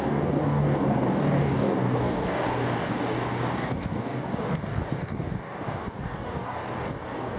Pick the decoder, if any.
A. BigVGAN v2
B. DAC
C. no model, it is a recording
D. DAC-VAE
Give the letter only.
B